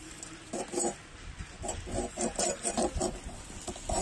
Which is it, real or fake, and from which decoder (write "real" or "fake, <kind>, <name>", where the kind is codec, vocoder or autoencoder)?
real